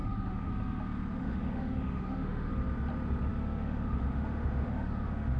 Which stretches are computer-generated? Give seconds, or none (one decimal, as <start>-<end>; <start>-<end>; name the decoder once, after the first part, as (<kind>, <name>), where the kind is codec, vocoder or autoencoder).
0.0-0.5 (autoencoder, DAC-VAE); 1.2-2.5; 3.3-5.4